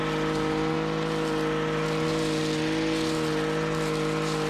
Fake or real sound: real